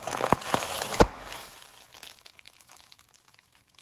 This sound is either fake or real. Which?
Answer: fake